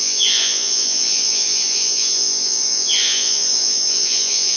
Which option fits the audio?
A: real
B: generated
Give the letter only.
B